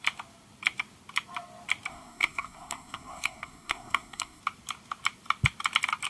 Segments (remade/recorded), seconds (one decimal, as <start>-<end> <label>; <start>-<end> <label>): 0.0-1.9 recorded; 1.9-4.4 remade; 4.4-6.1 recorded